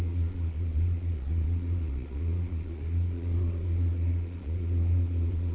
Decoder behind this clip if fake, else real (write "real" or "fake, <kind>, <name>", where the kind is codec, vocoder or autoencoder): fake, vocoder, Vocos